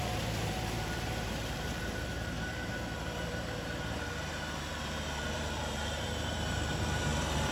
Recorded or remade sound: remade